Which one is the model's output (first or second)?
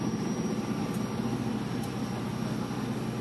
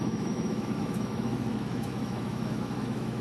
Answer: second